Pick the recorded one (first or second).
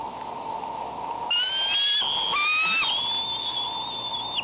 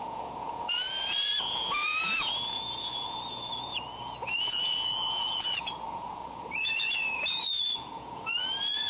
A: first